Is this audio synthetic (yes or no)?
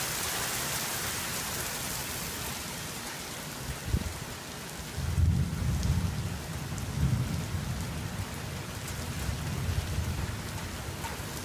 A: no